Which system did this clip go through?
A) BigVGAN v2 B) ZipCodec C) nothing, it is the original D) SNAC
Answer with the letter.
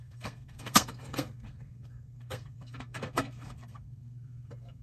D